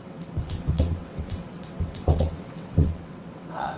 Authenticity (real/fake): fake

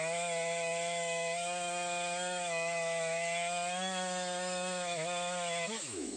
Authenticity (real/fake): fake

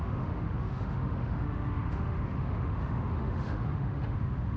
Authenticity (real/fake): fake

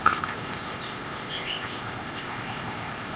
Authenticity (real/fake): fake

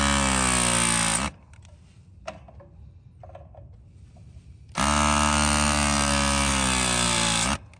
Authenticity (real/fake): real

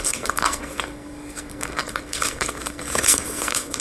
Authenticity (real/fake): fake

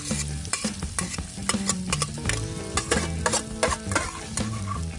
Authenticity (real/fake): real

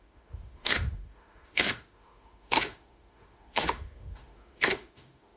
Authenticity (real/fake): fake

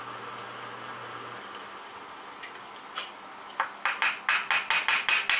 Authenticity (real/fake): real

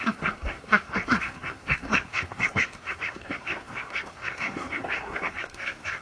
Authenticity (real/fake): fake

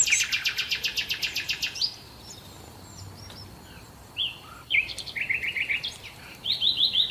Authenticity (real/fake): real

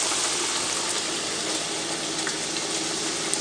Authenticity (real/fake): real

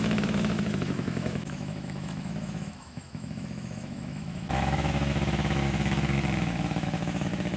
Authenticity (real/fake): fake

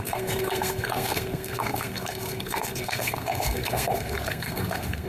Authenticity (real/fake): fake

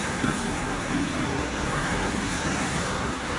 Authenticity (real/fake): fake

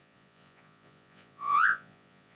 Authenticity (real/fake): fake